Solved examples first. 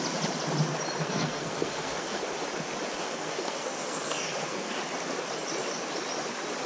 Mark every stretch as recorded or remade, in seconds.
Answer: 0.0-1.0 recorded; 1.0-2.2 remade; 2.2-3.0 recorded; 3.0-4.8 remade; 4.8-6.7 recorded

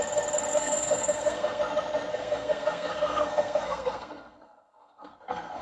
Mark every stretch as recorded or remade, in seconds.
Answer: 0.0-0.5 recorded; 0.5-1.6 remade; 1.6-2.1 recorded; 2.1-5.6 remade

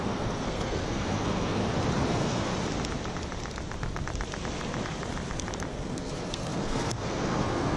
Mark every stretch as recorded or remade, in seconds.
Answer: 0.0-1.6 remade; 1.6-2.1 recorded; 2.1-2.5 remade; 2.5-5.7 recorded; 5.7-7.8 remade

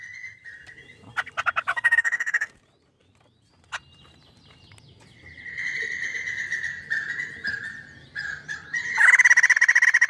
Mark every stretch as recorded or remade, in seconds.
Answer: 0.0-1.7 recorded; 1.7-2.5 remade; 2.5-10.1 recorded

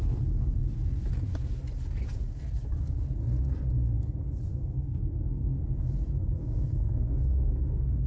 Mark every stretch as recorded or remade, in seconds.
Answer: 0.0-4.5 recorded; 4.5-5.6 remade; 5.6-6.4 recorded; 6.4-8.1 remade

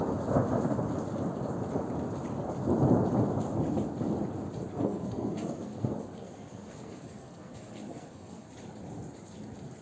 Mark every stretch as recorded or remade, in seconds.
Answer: 0.0-4.7 recorded; 4.7-8.5 remade; 8.5-9.8 recorded

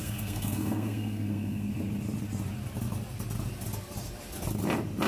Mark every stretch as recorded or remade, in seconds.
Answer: 0.0-1.7 remade; 1.7-5.1 recorded

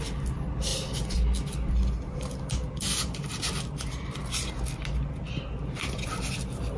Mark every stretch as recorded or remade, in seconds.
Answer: 0.0-6.8 recorded